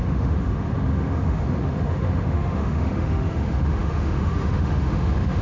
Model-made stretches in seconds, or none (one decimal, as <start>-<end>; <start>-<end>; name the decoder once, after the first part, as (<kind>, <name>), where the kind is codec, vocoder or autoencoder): 0.0-5.4 (autoencoder, DAC-VAE)